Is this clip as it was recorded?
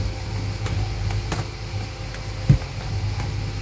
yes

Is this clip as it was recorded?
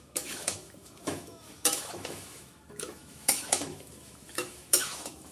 no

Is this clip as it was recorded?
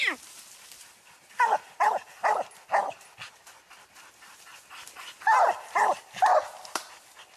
yes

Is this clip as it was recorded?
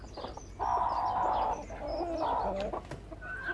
yes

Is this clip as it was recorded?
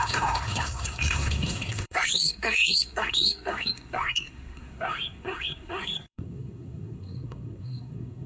no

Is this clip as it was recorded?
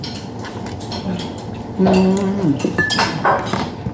yes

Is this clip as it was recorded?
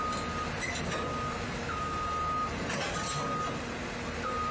yes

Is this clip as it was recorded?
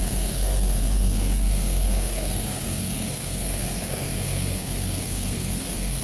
no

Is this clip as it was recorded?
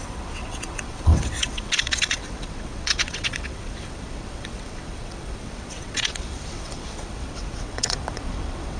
no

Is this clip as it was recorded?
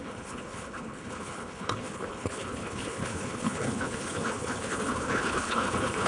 no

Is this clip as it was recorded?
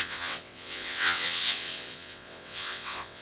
no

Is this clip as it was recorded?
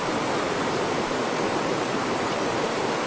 no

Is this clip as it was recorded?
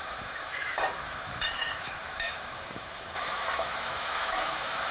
no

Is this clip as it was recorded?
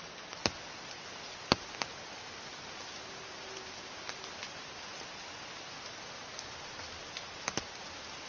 yes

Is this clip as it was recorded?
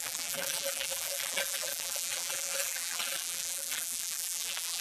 no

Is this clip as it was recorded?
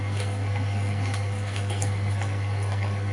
no